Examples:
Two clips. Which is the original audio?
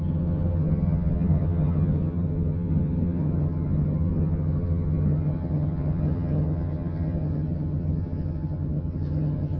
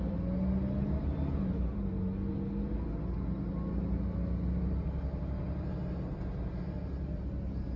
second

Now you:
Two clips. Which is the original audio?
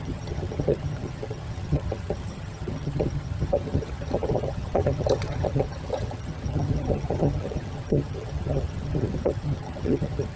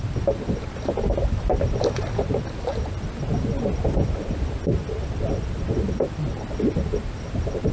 second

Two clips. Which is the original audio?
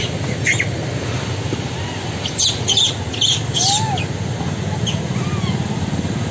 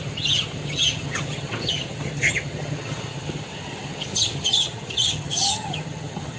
first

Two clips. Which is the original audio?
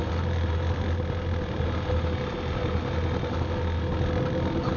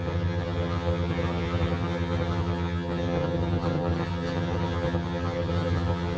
first